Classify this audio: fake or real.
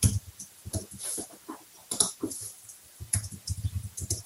fake